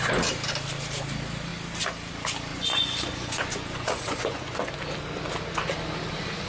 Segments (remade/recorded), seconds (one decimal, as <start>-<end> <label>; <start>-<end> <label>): 0.0-2.5 recorded; 2.5-4.8 remade; 4.8-6.5 recorded